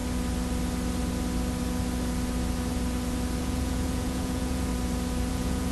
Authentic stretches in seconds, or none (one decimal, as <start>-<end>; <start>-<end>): 0.0-3.4; 4.7-5.3